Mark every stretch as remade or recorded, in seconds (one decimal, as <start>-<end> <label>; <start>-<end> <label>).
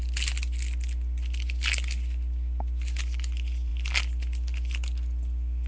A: 0.0-5.7 recorded